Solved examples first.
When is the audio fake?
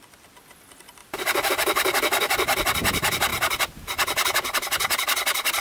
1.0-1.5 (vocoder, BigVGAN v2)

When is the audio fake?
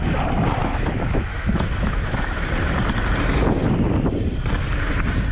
0.6-2.5 (autoencoder, DAC-VAE)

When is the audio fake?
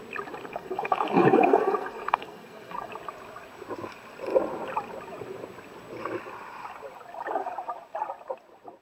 0.5-2.9 (codec, SNAC)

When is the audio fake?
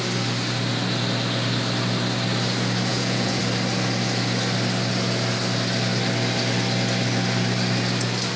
2.9-3.4 (vocoder, Vocos)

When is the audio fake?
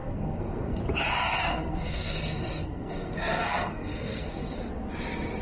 0.0-0.8 (codec, SNAC); 1.4-4.6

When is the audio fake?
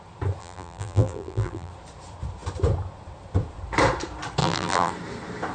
0.4-1.7 (vocoder, BigVGAN v2); 4.4-4.9